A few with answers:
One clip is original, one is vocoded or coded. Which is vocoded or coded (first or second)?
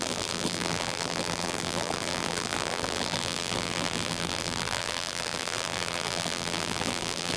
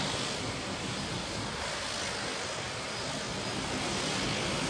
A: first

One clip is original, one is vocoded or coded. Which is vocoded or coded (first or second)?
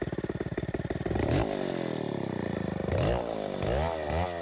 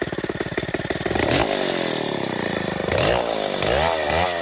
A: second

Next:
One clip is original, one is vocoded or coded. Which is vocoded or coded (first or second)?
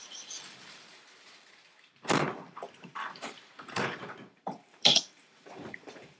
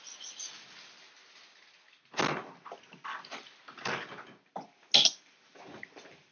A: first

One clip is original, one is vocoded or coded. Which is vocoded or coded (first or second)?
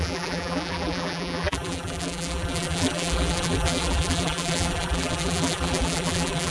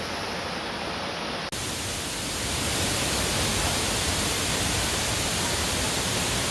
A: first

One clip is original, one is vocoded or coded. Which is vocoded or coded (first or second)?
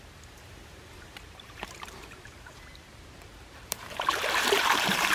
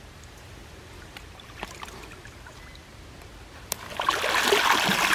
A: first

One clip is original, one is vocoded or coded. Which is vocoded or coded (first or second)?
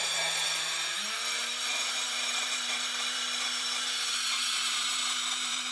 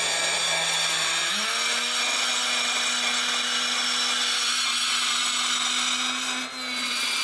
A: first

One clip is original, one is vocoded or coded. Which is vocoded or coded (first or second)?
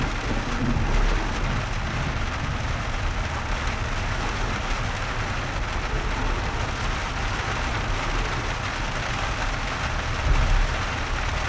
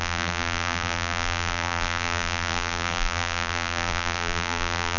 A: second